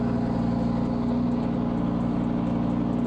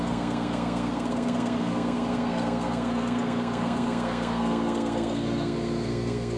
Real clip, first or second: first